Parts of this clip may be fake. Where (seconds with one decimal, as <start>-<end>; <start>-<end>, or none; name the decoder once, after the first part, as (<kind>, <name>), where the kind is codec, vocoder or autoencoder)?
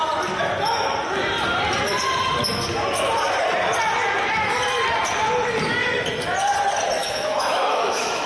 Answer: 7.0-8.3 (autoencoder, DAC-VAE)